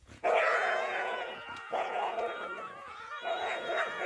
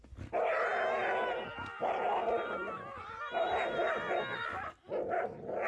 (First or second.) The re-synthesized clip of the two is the first